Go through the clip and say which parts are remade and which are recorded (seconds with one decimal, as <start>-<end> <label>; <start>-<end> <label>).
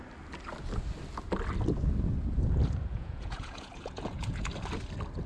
0.0-2.9 recorded; 2.9-4.5 remade; 4.5-5.3 recorded